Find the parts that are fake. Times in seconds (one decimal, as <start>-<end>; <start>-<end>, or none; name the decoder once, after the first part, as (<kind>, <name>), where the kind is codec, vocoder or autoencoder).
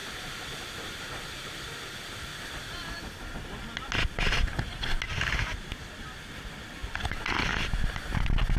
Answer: 0.0-2.3 (vocoder, BigVGAN v2); 6.2-6.8; 8.1-8.6